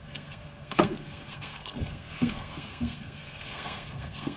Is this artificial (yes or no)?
yes